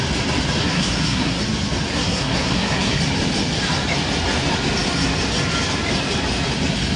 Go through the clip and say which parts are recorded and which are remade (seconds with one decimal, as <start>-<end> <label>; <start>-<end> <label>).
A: 0.0-0.6 recorded; 0.6-1.4 remade; 1.4-1.9 recorded; 1.9-3.0 remade; 3.0-7.0 recorded

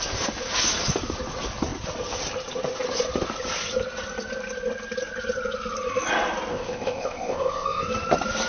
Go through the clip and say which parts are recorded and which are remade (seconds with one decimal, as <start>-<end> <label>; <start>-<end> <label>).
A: 0.0-6.5 recorded; 6.5-7.9 remade; 7.9-8.5 recorded

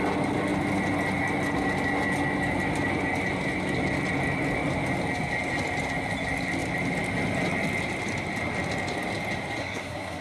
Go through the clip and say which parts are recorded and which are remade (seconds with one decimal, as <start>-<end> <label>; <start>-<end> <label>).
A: 0.0-9.6 recorded; 9.6-10.2 remade

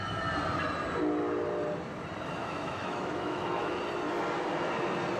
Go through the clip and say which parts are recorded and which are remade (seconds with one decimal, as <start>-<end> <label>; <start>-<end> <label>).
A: 0.0-2.4 recorded; 2.4-3.8 remade; 3.8-5.2 recorded

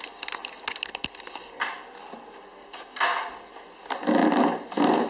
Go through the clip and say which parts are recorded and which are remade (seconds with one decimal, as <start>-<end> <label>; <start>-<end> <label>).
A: 0.0-5.1 recorded